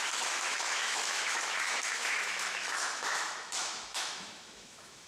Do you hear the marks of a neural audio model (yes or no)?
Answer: yes